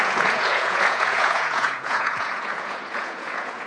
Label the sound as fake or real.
fake